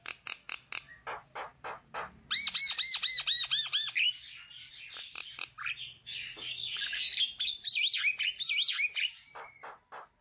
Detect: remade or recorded recorded